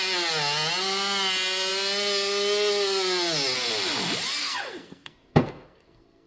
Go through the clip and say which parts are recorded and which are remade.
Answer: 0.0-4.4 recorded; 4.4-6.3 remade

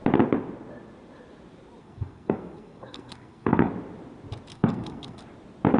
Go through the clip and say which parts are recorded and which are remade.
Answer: 0.0-1.8 recorded; 1.8-3.7 remade; 3.7-4.5 recorded; 4.5-5.2 remade; 5.2-5.8 recorded

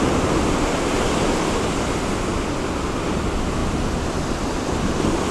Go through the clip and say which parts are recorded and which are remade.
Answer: 0.0-5.3 recorded

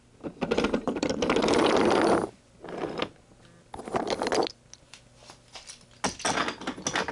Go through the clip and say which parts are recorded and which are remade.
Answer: 0.0-7.1 recorded

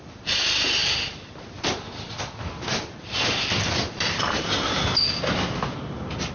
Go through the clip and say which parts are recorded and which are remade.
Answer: 0.0-0.8 recorded; 0.8-4.6 remade; 4.6-6.3 recorded

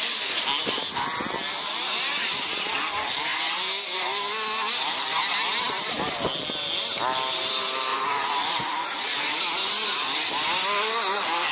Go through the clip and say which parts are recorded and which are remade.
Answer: 0.0-7.9 recorded; 7.9-9.4 remade; 9.4-11.5 recorded

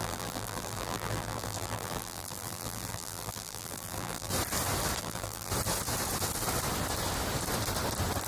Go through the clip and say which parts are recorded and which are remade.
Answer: 0.0-4.3 remade; 4.3-5.0 recorded; 5.0-5.5 remade; 5.5-8.3 recorded

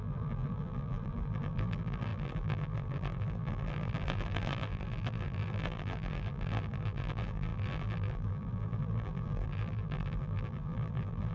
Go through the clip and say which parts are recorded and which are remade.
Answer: 0.0-11.3 remade